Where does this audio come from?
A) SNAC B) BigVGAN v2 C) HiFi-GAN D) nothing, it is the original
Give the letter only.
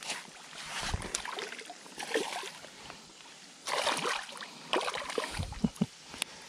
D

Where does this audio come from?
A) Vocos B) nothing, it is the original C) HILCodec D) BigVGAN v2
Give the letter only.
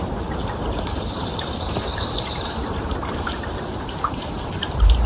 D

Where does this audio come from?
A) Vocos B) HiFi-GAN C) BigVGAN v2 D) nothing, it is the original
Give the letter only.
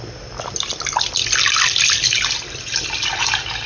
D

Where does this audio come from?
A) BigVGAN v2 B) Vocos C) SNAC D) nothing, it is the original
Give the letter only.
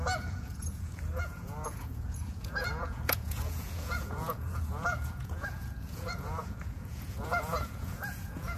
B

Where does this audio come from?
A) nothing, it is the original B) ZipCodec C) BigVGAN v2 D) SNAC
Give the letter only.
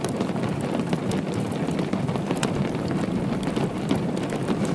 A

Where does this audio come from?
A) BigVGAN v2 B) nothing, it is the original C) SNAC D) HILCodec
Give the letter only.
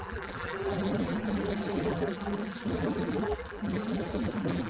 A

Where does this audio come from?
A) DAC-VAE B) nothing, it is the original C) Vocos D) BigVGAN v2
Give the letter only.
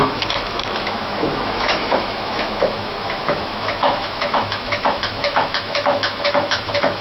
A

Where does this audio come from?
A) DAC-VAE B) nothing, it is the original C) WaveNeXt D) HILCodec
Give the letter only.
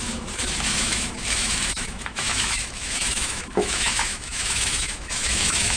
A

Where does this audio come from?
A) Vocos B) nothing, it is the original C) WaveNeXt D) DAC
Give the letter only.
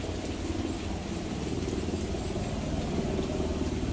B